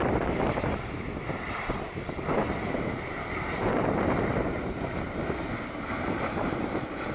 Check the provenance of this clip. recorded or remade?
remade